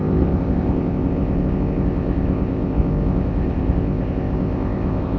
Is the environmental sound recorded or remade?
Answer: remade